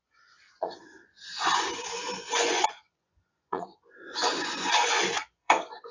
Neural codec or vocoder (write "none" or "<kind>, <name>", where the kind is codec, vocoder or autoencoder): vocoder, Vocos